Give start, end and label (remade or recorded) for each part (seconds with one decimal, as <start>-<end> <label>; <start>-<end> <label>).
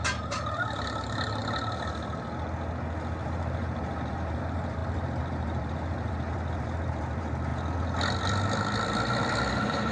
0.0-1.4 remade; 1.4-3.2 recorded; 3.2-7.5 remade; 7.5-9.5 recorded; 9.5-9.9 remade